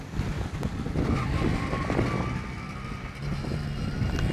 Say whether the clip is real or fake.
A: real